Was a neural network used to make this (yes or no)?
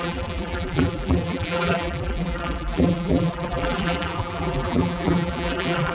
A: yes